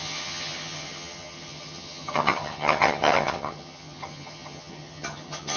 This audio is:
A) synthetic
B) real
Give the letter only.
A